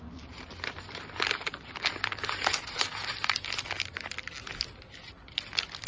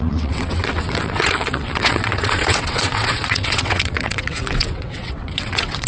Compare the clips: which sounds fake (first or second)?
second